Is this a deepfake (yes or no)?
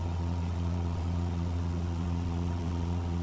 yes